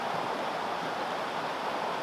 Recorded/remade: recorded